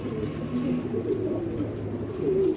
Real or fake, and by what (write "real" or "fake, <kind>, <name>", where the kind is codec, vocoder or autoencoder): real